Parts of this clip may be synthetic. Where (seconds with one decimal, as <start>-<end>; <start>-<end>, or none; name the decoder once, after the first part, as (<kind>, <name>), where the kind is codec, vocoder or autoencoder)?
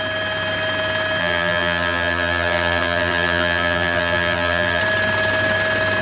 1.2-4.8 (vocoder, BigVGAN v2)